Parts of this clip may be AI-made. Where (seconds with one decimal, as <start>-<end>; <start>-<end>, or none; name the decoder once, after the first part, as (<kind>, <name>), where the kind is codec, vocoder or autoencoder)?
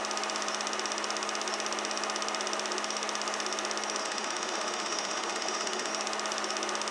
4.0-5.9 (autoencoder, DAC-VAE)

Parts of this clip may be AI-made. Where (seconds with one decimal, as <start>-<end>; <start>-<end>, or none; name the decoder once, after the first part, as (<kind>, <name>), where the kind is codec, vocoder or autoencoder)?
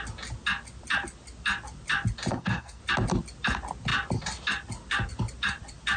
2.3-2.8 (codec, SNAC)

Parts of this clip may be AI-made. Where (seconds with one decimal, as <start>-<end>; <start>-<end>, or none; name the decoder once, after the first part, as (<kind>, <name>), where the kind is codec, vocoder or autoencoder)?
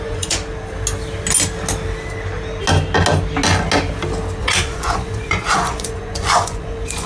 0.0-0.4 (vocoder, Vocos); 4.4-7.1